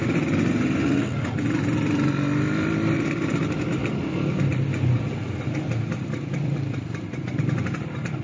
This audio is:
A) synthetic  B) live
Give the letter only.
B